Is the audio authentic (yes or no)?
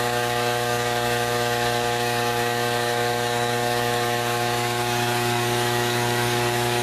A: no